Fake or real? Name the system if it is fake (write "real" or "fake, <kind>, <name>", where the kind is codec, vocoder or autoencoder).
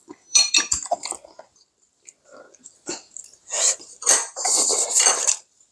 fake, vocoder, BigVGAN v2